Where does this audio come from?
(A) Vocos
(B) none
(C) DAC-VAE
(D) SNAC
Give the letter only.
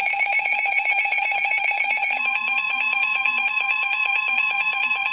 A